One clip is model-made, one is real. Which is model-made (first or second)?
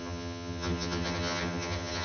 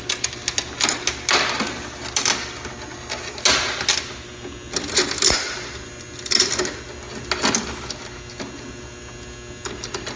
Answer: first